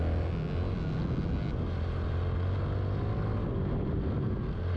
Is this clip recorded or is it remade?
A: recorded